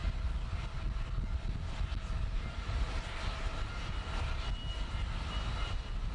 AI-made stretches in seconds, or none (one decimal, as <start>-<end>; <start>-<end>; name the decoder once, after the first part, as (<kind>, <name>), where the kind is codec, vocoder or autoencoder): none